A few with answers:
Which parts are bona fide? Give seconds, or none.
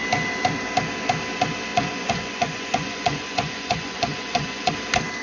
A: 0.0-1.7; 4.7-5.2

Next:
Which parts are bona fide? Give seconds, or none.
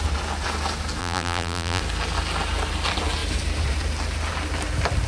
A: 0.0-1.0; 1.8-5.1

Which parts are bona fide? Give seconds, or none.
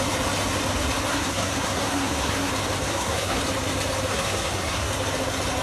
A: 0.0-1.1; 2.5-2.9; 3.4-4.1; 4.9-5.6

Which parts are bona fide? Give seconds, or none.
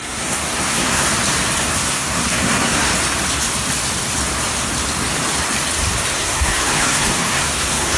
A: 1.1-1.7; 2.9-6.1